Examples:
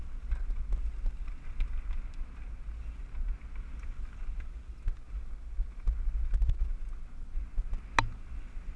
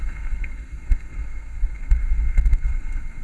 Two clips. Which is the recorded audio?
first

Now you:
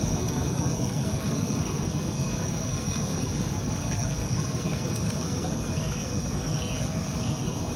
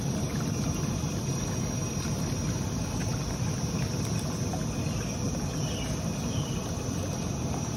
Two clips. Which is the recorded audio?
second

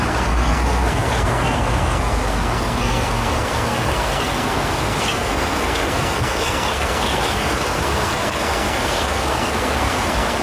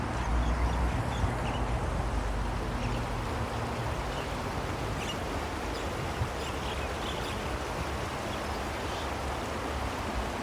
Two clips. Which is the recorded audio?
second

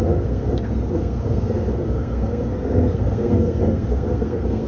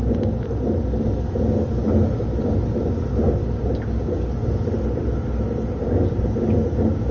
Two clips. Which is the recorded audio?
second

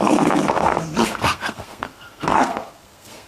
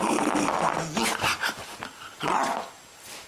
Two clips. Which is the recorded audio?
second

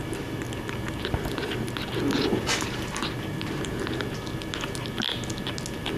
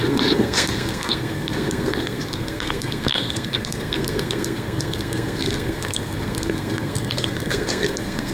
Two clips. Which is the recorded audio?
first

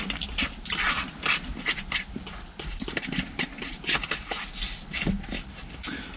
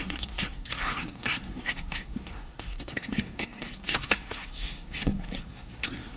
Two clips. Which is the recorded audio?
first